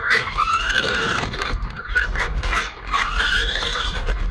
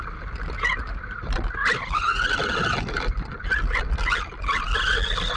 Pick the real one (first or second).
second